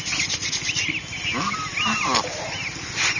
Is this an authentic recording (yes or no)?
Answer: yes